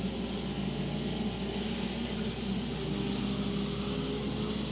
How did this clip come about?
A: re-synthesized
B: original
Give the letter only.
B